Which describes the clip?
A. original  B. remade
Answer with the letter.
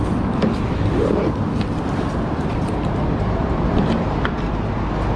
A